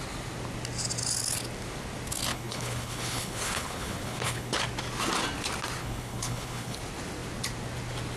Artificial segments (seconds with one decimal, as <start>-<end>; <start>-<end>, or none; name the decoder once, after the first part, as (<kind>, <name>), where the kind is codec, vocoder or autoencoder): 2.3-4.6 (codec, HILCodec); 5.8-6.8

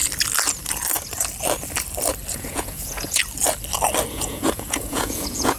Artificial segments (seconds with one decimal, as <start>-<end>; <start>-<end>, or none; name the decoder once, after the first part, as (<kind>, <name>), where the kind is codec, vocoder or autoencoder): 2.3-3.2 (vocoder, Vocos); 4.1-5.6

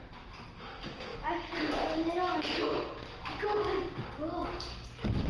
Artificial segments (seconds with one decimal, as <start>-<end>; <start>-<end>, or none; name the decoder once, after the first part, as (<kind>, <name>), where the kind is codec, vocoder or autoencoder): none

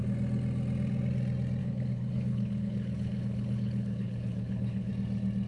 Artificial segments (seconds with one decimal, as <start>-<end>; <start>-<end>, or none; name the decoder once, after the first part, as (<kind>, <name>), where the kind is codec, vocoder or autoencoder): 1.6-4.9 (codec, HILCodec)